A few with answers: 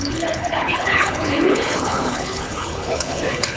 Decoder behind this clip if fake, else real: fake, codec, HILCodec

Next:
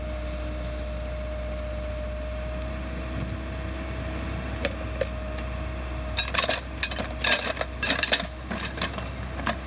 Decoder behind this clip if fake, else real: real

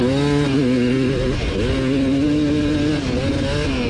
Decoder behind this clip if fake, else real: real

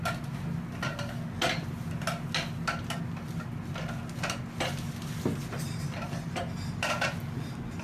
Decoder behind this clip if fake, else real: real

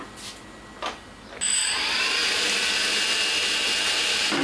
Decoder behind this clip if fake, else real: real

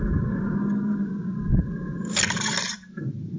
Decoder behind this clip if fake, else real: real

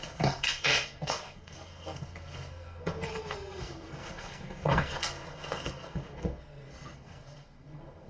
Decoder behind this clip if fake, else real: fake, codec, SNAC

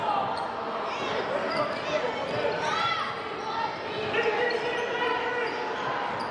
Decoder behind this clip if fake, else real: real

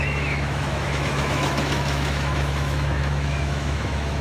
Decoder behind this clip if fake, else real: fake, autoencoder, DAC-VAE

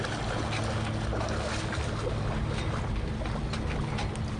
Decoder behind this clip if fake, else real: real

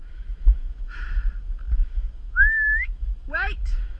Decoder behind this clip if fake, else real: fake, autoencoder, DAC-VAE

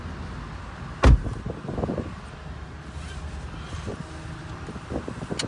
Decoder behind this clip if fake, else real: real